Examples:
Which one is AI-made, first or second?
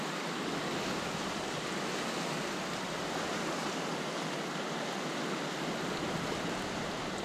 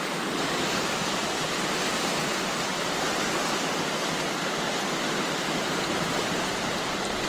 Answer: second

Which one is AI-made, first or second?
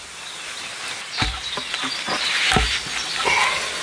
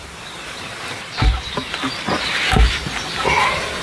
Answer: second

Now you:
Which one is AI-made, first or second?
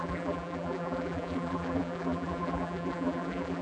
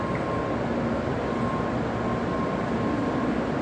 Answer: first